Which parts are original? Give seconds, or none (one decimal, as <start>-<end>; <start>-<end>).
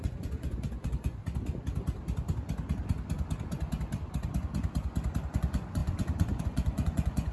1.2-5.3